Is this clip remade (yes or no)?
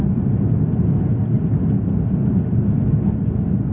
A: no